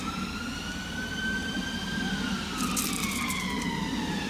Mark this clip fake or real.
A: real